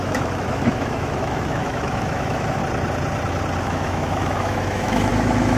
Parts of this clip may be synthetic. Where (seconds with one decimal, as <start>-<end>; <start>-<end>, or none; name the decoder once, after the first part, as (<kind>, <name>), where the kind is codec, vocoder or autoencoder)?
0.0-2.6 (autoencoder, DAC-VAE); 3.6-5.6